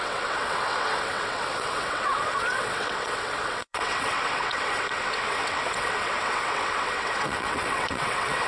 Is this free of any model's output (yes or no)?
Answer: no